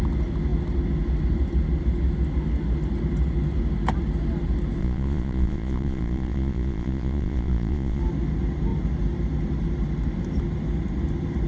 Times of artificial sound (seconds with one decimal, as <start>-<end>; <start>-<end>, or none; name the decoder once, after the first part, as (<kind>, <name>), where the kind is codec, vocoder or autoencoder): 4.8-8.0 (vocoder, Vocos)